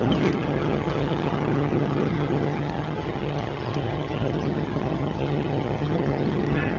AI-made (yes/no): yes